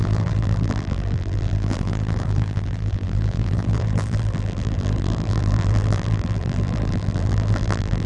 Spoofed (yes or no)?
yes